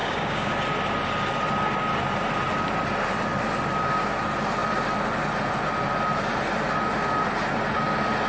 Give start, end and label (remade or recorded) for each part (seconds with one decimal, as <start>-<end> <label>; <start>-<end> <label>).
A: 0.0-0.5 remade; 0.5-8.3 recorded